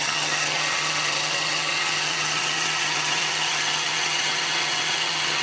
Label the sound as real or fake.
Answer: fake